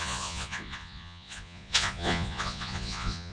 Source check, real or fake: fake